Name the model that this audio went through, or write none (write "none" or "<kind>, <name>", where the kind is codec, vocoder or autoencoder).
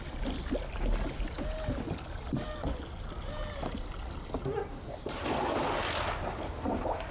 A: none